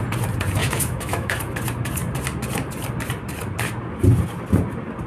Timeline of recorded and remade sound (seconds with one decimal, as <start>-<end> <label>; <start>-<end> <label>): 0.0-0.6 recorded; 0.6-1.4 remade; 1.4-5.1 recorded